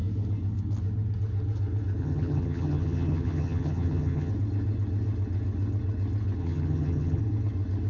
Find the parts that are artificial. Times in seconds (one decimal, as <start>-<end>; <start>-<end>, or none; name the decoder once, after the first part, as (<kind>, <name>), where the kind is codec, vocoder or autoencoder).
2.0-4.3 (vocoder, HiFi-GAN); 6.4-7.2